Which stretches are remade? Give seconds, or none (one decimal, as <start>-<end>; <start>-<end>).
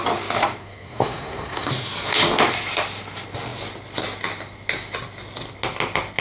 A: 0.6-1.7